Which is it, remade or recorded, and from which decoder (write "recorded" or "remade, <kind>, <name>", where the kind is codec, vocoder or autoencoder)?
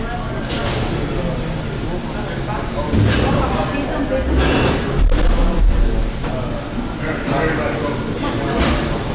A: recorded